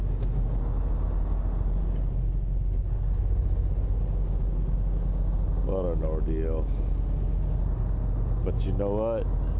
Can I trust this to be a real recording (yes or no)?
yes